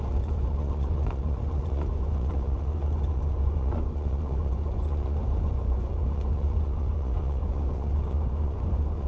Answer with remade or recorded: remade